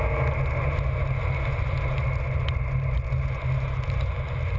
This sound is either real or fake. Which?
real